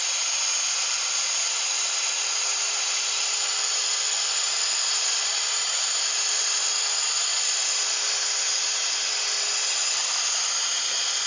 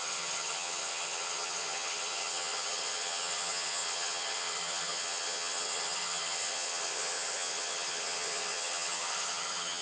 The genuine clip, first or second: first